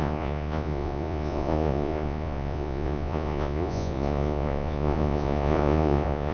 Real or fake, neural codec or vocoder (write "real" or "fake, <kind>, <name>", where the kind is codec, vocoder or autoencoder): fake, vocoder, Vocos